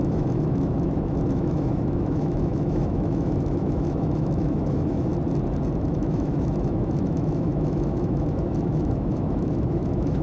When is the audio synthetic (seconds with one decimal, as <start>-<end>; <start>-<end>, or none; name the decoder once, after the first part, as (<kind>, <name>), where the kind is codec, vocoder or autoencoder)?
0.0-5.1 (autoencoder, DAC-VAE); 5.8-10.2